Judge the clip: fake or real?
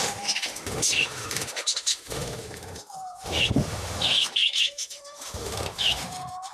fake